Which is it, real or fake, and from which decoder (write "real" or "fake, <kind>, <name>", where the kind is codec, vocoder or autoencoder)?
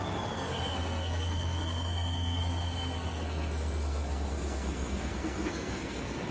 fake, codec, SNAC